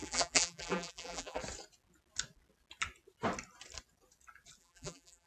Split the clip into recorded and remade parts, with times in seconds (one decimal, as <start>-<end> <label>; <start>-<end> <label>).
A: 0.0-1.4 remade; 1.4-4.6 recorded; 4.6-5.3 remade

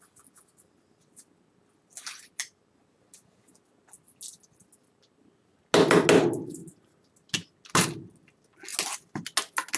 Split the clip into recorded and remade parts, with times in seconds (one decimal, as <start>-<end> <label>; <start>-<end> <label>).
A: 0.0-9.8 recorded